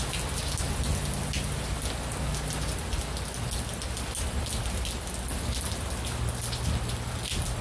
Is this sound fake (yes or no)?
no